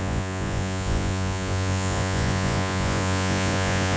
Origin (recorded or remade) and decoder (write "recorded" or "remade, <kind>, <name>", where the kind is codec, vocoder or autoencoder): remade, vocoder, Vocos